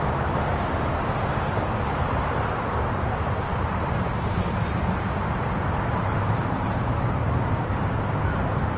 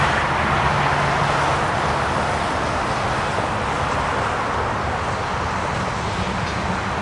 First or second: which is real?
second